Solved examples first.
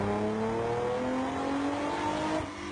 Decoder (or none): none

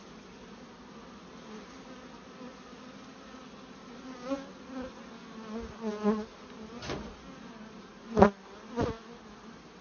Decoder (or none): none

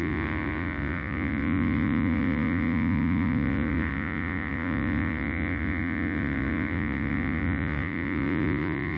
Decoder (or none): vocoder, Vocos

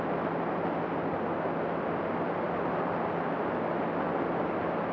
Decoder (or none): none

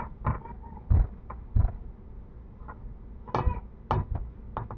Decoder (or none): none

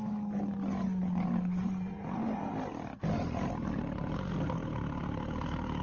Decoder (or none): none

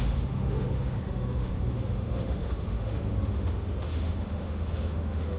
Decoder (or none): autoencoder, DAC-VAE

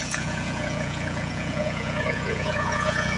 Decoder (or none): vocoder, Vocos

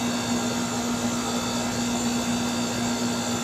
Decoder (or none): none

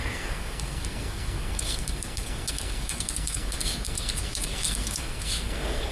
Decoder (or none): codec, SNAC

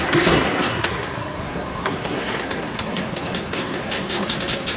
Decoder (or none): codec, SNAC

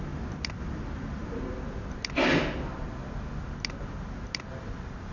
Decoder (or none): none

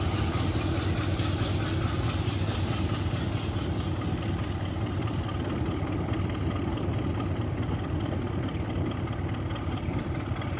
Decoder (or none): none